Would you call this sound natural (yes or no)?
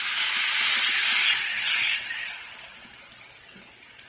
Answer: yes